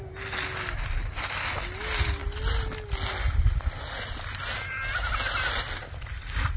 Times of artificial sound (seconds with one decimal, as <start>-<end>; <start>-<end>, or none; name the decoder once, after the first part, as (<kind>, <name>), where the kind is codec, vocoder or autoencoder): none